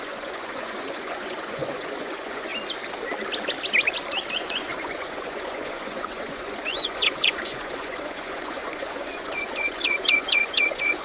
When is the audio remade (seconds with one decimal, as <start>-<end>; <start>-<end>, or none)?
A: 0.0-2.5; 4.3-11.0